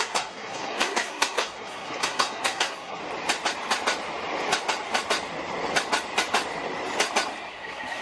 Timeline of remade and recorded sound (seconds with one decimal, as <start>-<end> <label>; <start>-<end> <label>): 0.0-3.0 remade; 3.0-7.5 recorded; 7.5-8.0 remade